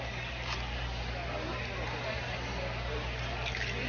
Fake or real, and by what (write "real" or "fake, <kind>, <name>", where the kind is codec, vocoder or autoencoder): real